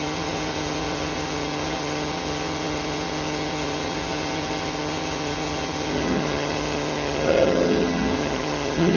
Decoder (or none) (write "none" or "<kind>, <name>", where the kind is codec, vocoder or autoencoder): vocoder, HiFi-GAN